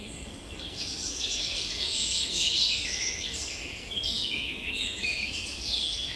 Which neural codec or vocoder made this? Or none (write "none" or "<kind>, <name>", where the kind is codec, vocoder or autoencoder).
codec, SNAC